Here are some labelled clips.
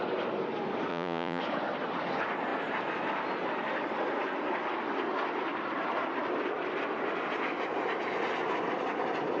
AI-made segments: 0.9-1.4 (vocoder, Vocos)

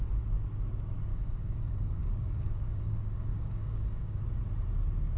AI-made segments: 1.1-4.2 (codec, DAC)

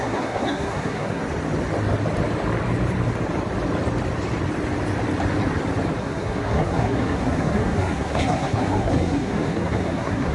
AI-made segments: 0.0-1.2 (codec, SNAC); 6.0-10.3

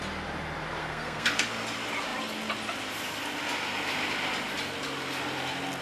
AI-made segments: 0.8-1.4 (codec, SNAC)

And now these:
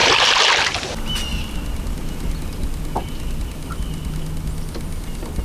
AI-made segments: none